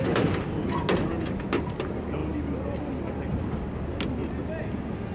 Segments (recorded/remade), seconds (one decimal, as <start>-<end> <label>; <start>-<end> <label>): 0.0-5.1 recorded